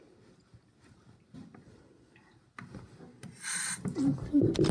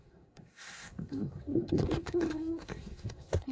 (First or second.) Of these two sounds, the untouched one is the first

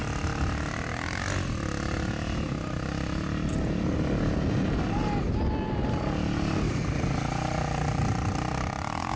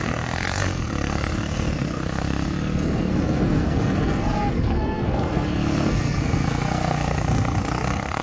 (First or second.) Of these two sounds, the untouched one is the first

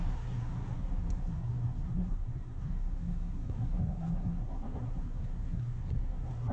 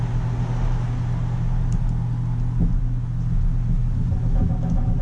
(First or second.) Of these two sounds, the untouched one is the second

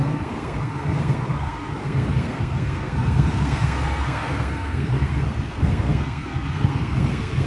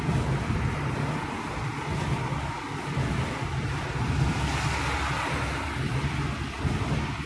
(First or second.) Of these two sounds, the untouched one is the second